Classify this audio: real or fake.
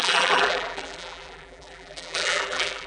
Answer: fake